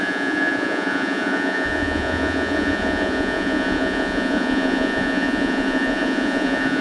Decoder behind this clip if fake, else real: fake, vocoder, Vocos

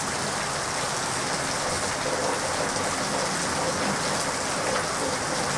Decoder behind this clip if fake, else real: real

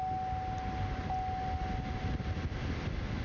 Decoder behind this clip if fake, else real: real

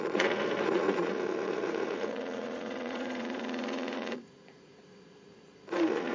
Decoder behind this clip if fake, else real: fake, vocoder, Vocos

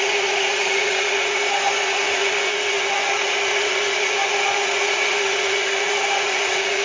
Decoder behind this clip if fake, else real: fake, vocoder, Vocos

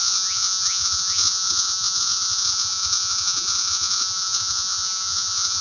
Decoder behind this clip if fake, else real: fake, vocoder, Vocos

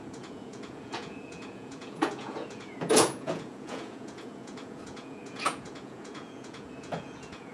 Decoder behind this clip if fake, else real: fake, vocoder, Vocos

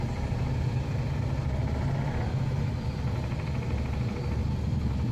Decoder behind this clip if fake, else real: real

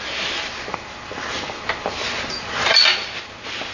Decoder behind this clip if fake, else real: real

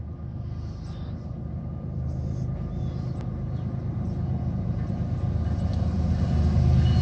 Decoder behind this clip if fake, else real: real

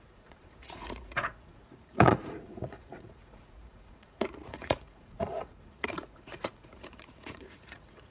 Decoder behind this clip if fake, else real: fake, vocoder, Vocos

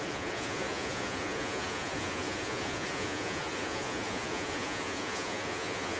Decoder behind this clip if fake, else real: fake, vocoder, Vocos